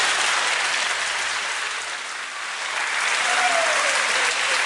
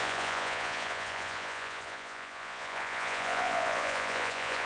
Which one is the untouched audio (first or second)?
first